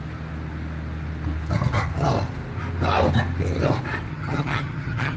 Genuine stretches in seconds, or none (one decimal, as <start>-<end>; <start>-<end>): 0.0-4.1